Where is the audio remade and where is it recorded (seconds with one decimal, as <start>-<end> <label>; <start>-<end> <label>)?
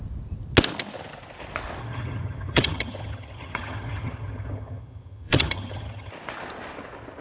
0.0-1.8 recorded; 1.8-6.1 remade; 6.1-7.2 recorded